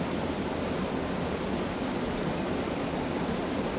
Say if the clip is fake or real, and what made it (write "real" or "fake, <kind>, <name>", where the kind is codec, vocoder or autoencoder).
real